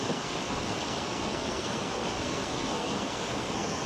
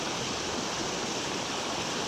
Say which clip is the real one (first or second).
second